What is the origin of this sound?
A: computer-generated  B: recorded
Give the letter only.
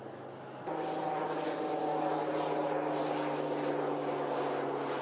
B